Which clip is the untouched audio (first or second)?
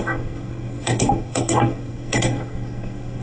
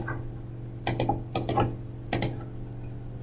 second